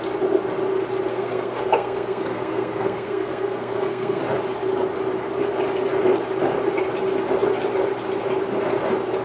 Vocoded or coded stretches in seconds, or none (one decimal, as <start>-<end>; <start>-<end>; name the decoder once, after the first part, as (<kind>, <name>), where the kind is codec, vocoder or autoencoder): 1.1-4.2 (codec, SNAC)